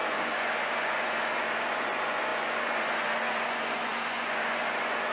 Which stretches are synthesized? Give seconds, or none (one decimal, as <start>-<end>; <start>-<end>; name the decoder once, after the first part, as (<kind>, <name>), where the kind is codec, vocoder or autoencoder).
0.0-5.1 (vocoder, Vocos)